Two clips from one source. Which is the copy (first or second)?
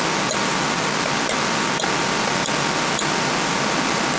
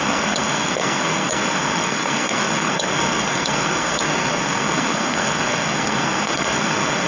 second